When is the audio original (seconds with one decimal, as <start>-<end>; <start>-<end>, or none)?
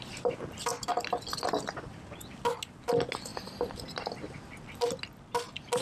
0.0-5.8